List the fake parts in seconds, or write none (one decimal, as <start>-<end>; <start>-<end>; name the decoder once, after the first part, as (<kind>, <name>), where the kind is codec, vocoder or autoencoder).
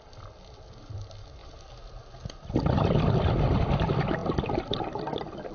4.2-4.8 (vocoder, BigVGAN v2)